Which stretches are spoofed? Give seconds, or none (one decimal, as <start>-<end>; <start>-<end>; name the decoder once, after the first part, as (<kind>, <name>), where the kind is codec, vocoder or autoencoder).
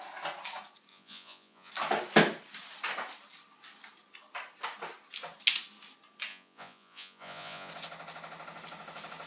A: 0.9-1.7 (vocoder, Vocos); 6.3-7.7